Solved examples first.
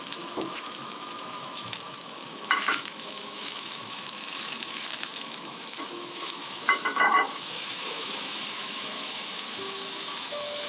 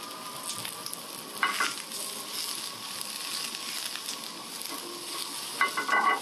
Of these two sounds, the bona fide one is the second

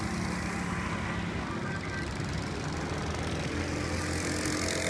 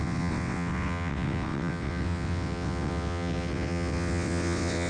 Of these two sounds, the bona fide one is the first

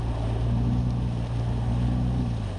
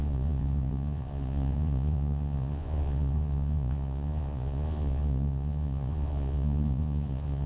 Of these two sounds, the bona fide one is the first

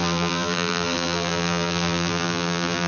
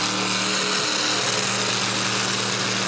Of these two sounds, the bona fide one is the second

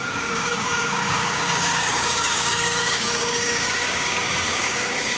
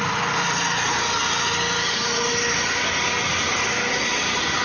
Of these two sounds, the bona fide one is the second